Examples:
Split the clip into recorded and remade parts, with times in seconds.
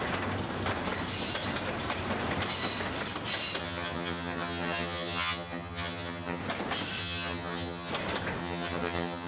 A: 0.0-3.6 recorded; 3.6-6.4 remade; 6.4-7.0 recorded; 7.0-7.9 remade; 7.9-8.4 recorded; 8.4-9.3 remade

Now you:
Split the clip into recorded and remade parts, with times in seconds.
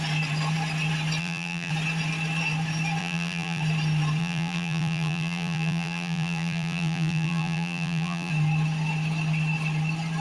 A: 0.0-1.2 recorded; 1.2-1.7 remade; 1.7-3.0 recorded; 3.0-3.6 remade; 3.6-4.2 recorded; 4.2-8.3 remade; 8.3-10.2 recorded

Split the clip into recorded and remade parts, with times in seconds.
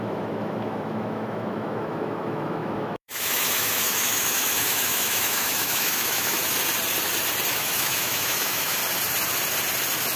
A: 0.0-6.4 remade; 6.4-7.5 recorded; 7.5-8.8 remade; 8.8-10.2 recorded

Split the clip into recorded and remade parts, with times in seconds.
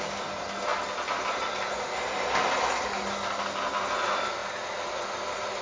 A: 0.0-5.6 recorded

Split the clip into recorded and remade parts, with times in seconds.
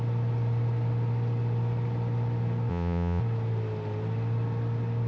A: 0.0-2.7 recorded; 2.7-3.2 remade; 3.2-5.1 recorded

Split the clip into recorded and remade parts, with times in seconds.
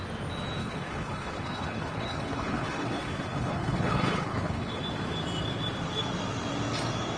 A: 0.0-0.6 recorded; 0.6-4.8 remade; 4.8-7.2 recorded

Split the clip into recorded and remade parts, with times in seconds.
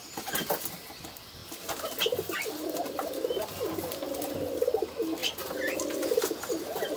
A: 0.0-7.0 recorded